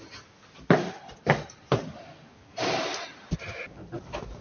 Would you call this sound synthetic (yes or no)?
no